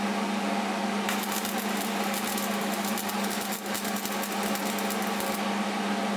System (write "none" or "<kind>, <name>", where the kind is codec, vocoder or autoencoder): none